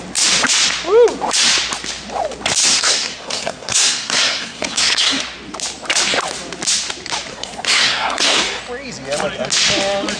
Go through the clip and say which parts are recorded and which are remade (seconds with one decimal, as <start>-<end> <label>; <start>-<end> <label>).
0.0-2.6 recorded; 2.6-5.2 remade; 5.2-7.3 recorded; 7.3-8.6 remade; 8.6-10.2 recorded